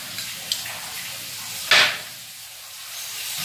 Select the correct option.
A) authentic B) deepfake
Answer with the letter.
A